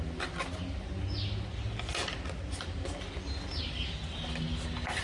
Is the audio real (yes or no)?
yes